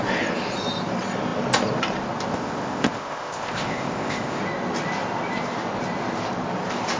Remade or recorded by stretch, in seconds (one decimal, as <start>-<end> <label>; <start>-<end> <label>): 0.0-2.3 recorded; 2.3-4.4 remade; 4.4-7.0 recorded